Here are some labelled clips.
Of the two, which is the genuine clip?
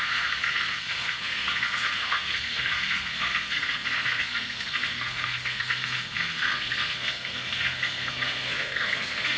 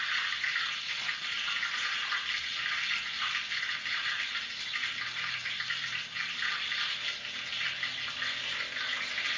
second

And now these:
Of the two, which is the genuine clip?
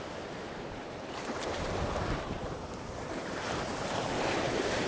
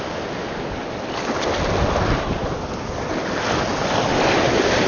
second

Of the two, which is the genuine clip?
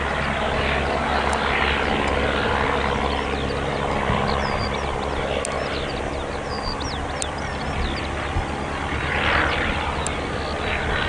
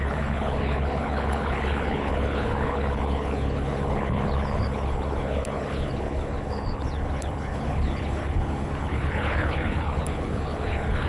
first